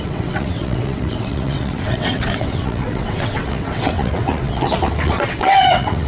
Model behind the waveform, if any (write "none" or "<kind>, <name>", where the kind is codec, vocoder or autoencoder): vocoder, WaveNeXt